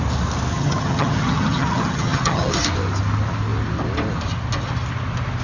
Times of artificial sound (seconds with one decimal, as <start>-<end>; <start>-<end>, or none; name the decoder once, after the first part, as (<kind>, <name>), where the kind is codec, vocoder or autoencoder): 0.5-2.5 (vocoder, HiFi-GAN)